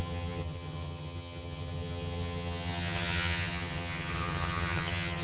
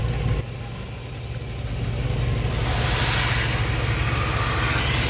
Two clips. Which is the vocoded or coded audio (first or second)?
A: first